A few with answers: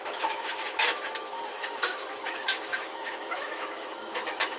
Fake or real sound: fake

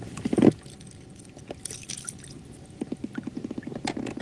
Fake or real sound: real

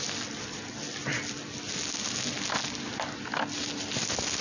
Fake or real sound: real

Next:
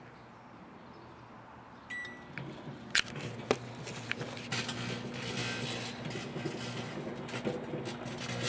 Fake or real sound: real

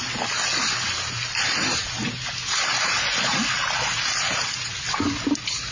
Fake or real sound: real